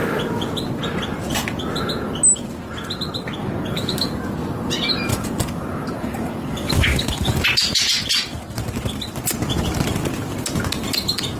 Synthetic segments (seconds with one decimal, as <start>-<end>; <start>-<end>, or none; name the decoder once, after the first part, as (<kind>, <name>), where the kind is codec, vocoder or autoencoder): 3.4-4.1 (codec, DAC); 5.1-7.4